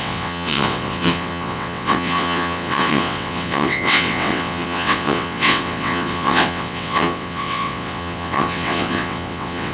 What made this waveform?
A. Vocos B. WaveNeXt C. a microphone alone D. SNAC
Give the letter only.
B